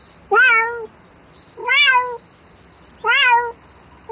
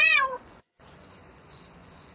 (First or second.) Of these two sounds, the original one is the first